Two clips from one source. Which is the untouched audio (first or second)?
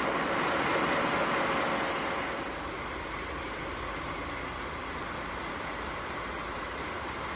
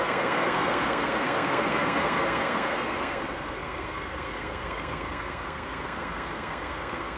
first